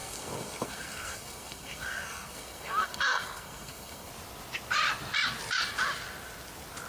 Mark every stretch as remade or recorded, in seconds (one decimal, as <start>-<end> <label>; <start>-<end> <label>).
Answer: 0.0-4.1 remade; 4.1-6.9 recorded